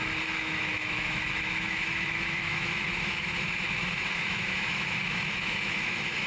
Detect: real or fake fake